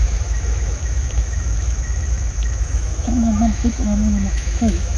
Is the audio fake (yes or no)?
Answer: yes